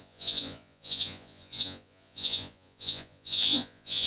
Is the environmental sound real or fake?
fake